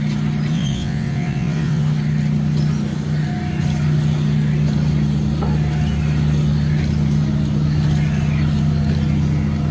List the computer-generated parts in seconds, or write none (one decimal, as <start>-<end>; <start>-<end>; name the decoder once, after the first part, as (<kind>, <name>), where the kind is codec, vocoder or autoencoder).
0.5-1.8 (vocoder, WaveNeXt)